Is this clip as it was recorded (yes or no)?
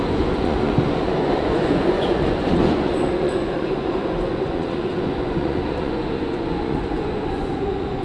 no